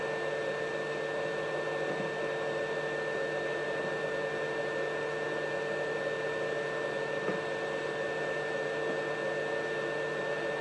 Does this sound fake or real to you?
real